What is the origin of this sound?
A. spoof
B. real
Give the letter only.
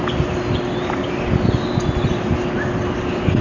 B